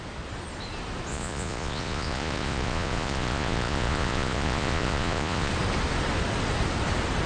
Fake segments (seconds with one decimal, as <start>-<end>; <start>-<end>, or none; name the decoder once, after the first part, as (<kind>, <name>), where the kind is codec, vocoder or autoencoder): 1.1-5.5 (vocoder, Vocos)